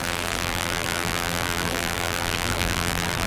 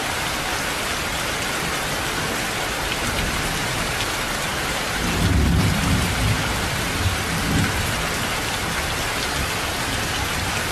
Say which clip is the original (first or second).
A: second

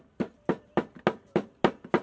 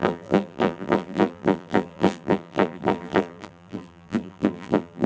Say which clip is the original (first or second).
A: first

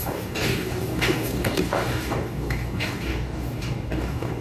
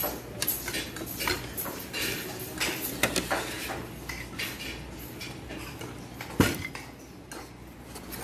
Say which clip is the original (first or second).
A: second